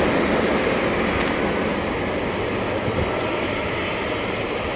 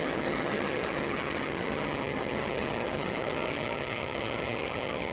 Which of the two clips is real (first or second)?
first